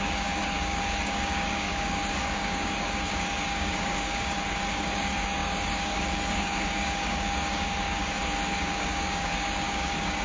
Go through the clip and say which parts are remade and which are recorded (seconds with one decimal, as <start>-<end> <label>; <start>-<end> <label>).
0.0-10.2 remade